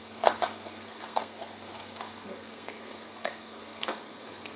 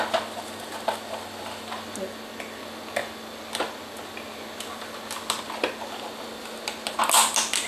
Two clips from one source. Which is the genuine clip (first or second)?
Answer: second